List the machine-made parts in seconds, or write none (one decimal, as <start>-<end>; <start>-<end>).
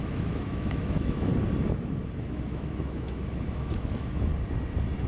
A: 0.0-1.3; 2.2-4.3